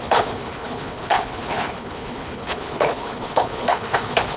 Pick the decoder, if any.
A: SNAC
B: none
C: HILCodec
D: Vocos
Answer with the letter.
C